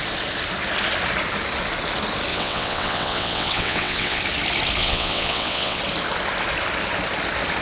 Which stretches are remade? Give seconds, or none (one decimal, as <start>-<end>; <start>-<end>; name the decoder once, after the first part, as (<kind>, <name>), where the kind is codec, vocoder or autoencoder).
2.3-4.2 (vocoder, WaveNeXt); 4.8-5.8